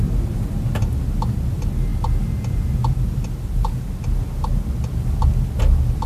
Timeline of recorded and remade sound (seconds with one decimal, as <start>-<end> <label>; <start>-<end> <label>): 0.0-6.1 recorded